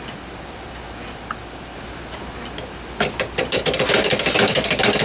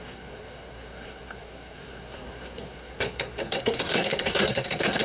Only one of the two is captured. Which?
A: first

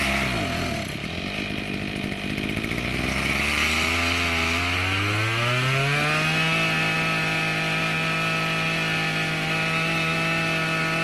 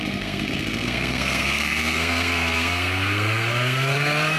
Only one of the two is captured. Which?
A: first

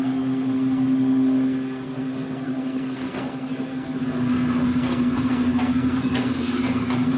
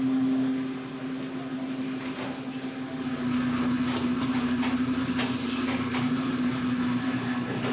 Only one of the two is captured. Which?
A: second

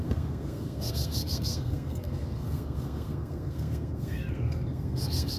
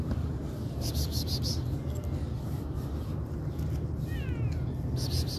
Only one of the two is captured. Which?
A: second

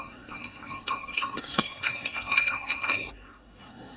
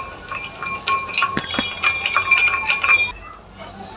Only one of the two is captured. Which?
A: second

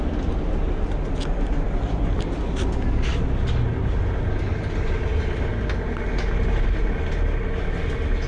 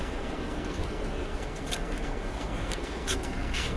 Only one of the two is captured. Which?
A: first